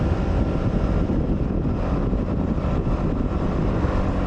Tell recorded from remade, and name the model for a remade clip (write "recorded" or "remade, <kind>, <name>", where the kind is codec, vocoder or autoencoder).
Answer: recorded